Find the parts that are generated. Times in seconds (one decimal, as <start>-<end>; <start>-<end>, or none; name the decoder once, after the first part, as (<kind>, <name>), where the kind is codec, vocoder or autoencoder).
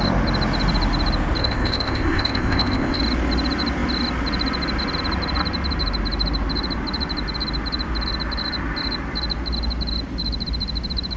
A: 1.4-3.0 (codec, ZipCodec)